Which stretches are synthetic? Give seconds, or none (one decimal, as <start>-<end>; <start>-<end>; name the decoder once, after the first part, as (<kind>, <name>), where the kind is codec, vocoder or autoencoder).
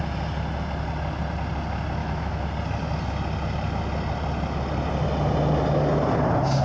2.0-2.5 (autoencoder, DAC-VAE)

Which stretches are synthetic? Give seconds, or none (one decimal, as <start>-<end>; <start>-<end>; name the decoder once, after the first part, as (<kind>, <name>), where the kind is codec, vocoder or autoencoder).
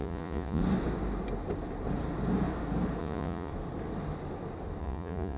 0.0-0.6 (vocoder, Vocos); 3.0-3.5; 4.8-5.4